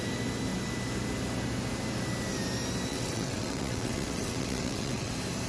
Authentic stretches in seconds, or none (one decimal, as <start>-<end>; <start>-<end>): 0.0-2.9; 5.1-5.5